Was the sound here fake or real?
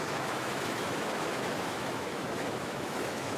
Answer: fake